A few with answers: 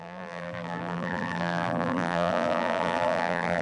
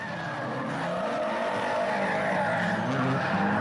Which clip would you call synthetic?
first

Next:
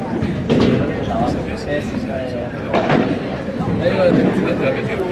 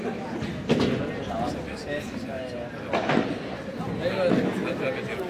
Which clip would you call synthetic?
first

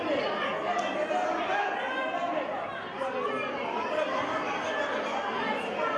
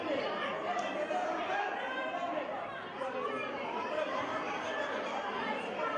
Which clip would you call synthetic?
second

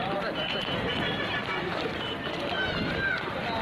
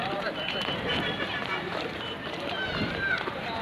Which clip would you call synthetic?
second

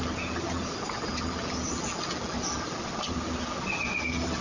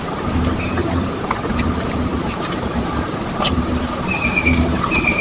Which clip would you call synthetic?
second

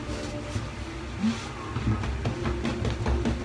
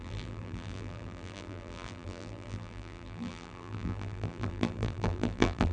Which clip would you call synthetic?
second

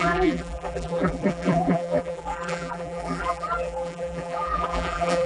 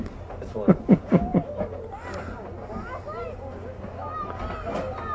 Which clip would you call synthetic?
first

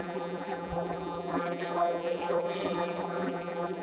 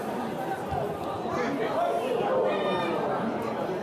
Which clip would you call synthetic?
first